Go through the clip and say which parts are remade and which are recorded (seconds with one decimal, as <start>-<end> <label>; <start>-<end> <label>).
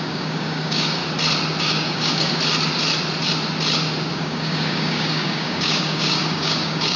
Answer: 0.0-1.0 remade; 1.0-1.6 recorded; 1.6-2.3 remade; 2.3-4.1 recorded; 4.1-7.0 remade